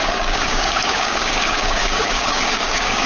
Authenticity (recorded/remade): remade